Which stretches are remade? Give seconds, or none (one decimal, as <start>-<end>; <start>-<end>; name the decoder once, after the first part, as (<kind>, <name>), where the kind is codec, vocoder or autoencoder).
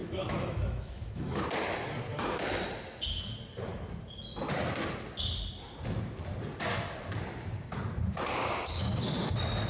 0.0-1.4 (autoencoder, DAC-VAE)